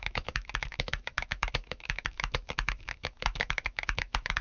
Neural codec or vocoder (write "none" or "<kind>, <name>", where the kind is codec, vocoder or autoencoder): autoencoder, DAC-VAE